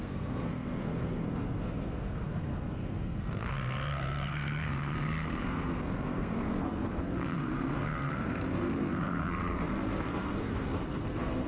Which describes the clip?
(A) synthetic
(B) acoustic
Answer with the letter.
A